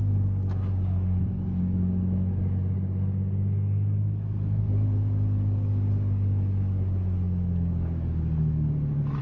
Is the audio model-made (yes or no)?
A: yes